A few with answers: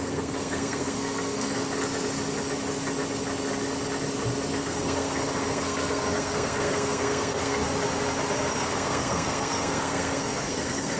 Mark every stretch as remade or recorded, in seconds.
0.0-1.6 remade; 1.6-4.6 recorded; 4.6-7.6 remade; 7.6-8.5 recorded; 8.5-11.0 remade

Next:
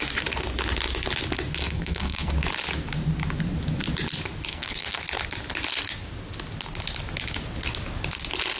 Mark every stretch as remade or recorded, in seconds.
0.0-1.6 recorded; 1.6-2.3 remade; 2.3-4.5 recorded; 4.5-5.0 remade; 5.0-8.6 recorded

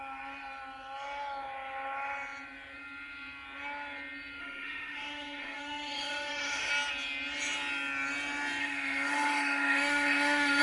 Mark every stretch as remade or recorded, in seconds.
0.0-4.4 recorded; 4.4-6.7 remade; 6.7-8.6 recorded; 8.6-10.6 remade

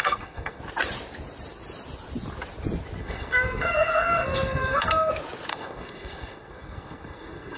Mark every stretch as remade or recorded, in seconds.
0.0-0.6 remade; 0.6-3.0 recorded; 3.0-5.1 remade; 5.1-5.5 recorded; 5.5-7.6 remade

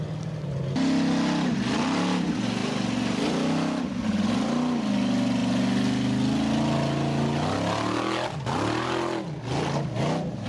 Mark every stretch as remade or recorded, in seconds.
0.0-10.5 recorded

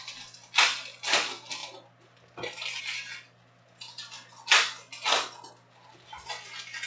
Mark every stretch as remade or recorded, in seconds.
0.0-6.9 recorded

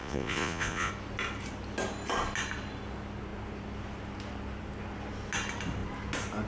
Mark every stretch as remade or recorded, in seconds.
0.0-0.9 remade; 0.9-6.5 recorded